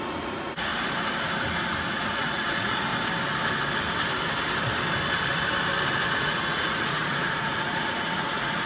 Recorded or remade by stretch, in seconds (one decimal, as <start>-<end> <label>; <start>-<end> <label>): 0.0-0.7 remade; 0.7-1.9 recorded; 1.9-2.9 remade; 2.9-6.1 recorded; 6.1-8.7 remade